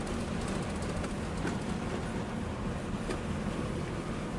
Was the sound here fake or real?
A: real